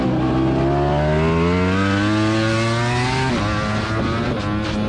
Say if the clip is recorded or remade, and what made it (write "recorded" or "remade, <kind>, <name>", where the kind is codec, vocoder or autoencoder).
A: recorded